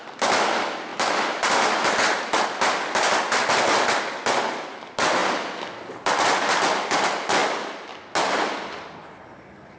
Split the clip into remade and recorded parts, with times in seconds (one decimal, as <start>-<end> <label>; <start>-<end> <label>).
0.0-9.8 recorded